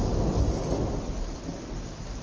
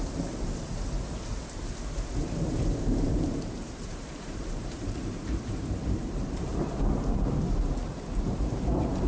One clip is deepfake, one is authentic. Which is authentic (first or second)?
first